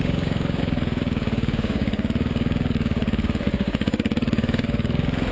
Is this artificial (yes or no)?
yes